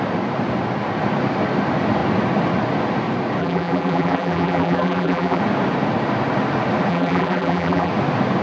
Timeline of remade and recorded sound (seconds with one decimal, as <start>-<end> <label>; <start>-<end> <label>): 0.0-3.4 recorded; 3.4-5.4 remade; 5.4-6.9 recorded; 6.9-7.9 remade; 7.9-8.4 recorded